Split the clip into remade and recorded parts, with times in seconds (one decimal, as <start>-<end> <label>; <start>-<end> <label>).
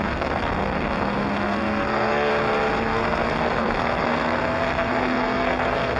0.0-2.3 remade; 2.3-2.8 recorded; 2.8-6.0 remade